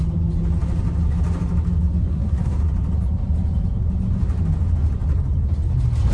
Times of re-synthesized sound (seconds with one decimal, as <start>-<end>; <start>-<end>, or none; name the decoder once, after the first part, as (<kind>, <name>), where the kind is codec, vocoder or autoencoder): 2.1-2.6 (codec, SNAC)